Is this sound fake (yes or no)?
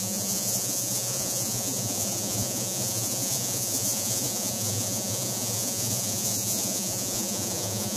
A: yes